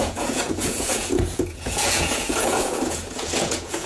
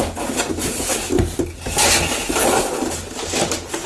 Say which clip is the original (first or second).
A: second